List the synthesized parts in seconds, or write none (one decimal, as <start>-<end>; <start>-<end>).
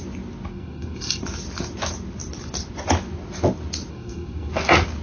0.5-1.2; 3.9-4.5